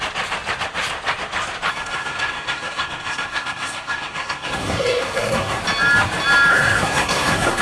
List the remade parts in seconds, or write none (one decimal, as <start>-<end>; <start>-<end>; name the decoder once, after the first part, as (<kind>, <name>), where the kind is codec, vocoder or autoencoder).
1.7-5.6 (codec, SNAC); 6.5-7.6